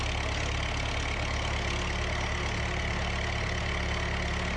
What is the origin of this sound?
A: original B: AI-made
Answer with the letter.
A